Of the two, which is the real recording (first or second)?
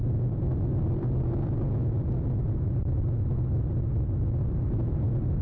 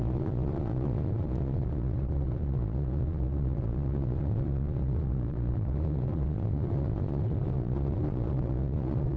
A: first